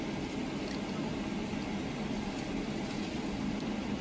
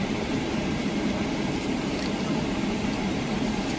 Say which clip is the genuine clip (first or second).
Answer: first